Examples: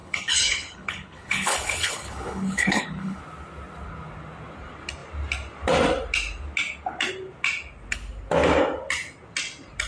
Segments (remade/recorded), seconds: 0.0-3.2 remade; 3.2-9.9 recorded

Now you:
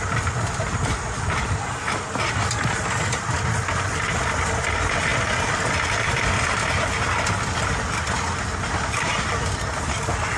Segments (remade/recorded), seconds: 0.0-10.4 recorded

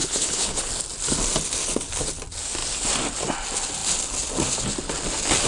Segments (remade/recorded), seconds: 0.0-0.7 remade; 0.7-5.5 recorded